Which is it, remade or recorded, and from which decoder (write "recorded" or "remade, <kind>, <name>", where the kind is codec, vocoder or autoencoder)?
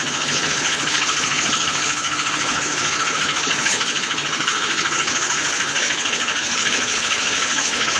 remade, codec, HILCodec